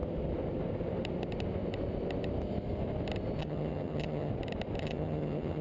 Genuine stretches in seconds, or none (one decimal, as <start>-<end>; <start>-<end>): 0.0-3.4; 4.3-4.8